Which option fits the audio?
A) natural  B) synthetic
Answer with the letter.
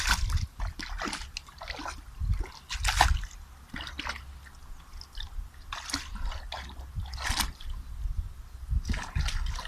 A